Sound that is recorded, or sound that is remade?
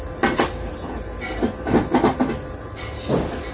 recorded